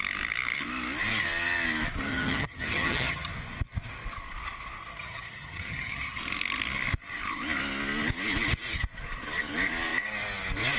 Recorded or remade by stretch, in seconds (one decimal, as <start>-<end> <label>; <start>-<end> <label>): 0.0-2.1 recorded; 2.1-3.3 remade; 3.3-5.0 recorded; 5.0-6.2 remade; 6.2-10.8 recorded